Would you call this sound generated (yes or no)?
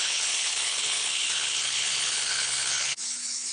yes